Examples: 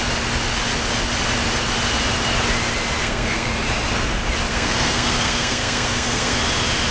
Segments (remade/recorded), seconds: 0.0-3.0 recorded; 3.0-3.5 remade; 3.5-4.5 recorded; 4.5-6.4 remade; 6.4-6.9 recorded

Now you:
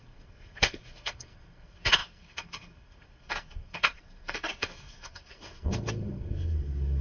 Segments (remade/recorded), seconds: 0.0-7.0 remade